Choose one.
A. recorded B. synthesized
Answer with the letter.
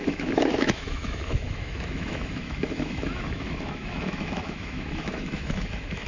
B